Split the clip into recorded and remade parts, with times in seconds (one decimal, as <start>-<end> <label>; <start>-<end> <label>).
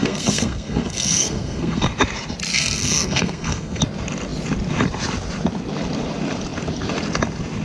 0.0-1.9 remade; 1.9-2.5 recorded; 2.5-3.8 remade; 3.8-7.6 recorded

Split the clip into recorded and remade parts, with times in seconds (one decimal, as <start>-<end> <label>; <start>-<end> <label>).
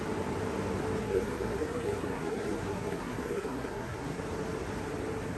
0.0-1.0 recorded; 1.0-4.2 remade; 4.2-5.4 recorded